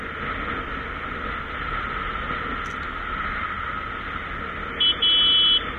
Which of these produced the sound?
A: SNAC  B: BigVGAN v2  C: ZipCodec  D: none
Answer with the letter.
D